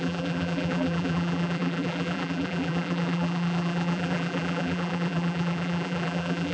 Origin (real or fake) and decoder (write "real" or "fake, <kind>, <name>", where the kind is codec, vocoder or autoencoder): fake, vocoder, BigVGAN v2